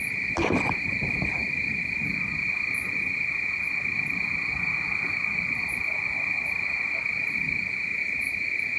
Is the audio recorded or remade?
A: recorded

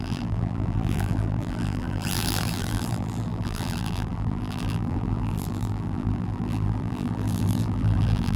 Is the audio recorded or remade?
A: remade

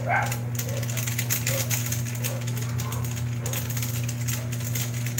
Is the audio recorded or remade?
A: recorded